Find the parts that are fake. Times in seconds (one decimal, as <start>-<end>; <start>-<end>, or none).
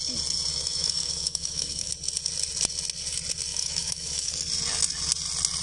0.5-1.9; 3.5-4.3